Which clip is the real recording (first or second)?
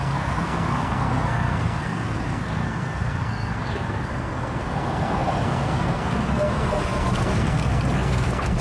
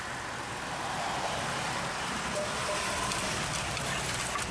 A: second